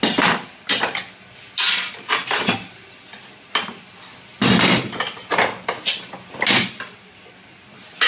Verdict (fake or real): real